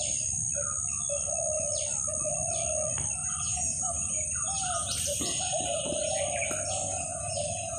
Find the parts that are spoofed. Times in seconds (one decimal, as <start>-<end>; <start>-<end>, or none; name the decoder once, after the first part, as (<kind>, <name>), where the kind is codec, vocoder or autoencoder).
3.2-6.2 (vocoder, BigVGAN v2); 6.9-7.8